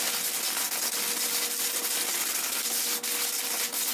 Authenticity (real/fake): real